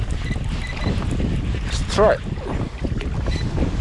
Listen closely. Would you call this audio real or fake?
real